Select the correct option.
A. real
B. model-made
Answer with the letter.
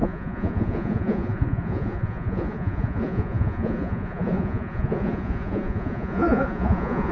B